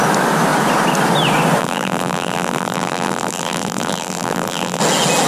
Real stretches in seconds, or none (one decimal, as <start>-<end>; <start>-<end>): 0.0-1.6; 4.8-5.3